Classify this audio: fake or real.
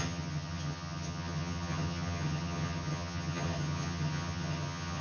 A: fake